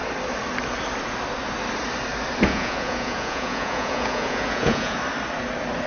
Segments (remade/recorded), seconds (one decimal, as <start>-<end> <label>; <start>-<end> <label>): 0.0-2.5 recorded; 2.5-5.0 remade; 5.0-5.9 recorded